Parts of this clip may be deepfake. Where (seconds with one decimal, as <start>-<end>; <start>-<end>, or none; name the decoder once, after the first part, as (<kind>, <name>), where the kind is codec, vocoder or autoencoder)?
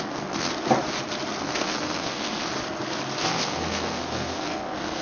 0.0-0.5 (codec, SNAC); 1.4-2.5; 3.2-5.0